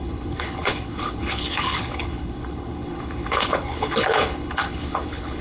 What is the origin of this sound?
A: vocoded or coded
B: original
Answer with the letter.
A